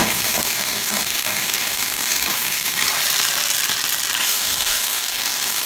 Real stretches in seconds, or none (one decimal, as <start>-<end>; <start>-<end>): 2.8-4.2